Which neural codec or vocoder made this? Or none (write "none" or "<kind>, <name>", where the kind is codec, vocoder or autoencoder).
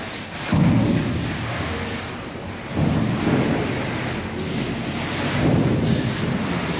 none